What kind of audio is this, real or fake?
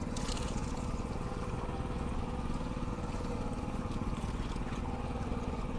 fake